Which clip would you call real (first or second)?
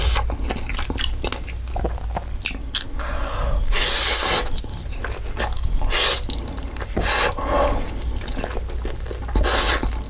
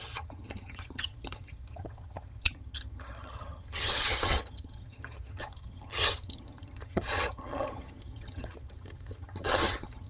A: first